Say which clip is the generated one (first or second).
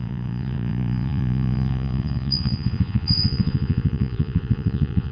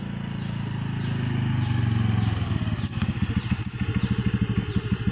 first